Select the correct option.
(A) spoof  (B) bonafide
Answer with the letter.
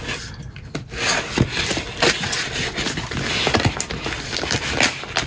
B